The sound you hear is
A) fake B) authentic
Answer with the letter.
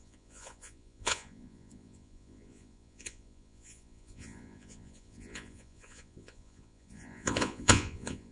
A